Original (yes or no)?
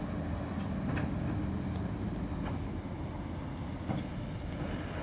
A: yes